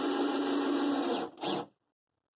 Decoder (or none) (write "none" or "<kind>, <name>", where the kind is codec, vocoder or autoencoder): none